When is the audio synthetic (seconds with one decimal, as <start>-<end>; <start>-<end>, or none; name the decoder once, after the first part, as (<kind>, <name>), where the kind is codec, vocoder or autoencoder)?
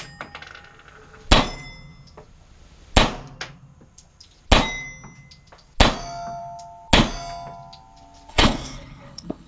8.3-9.5 (codec, HILCodec)